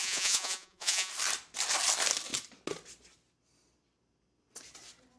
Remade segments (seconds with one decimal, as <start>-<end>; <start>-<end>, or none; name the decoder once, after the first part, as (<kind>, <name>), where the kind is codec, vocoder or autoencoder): 0.0-1.1 (vocoder, Vocos)